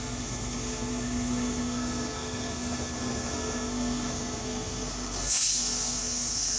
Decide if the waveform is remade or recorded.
remade